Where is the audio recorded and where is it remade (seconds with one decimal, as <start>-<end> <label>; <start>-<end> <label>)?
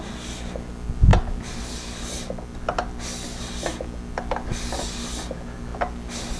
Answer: 0.0-6.4 recorded